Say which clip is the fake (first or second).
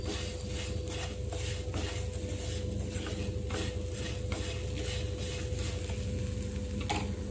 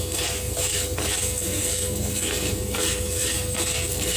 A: second